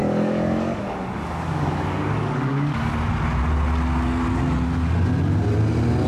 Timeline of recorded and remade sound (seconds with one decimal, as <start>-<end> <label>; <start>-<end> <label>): 0.0-2.9 remade; 2.9-6.1 recorded